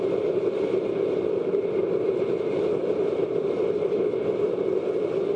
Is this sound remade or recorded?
recorded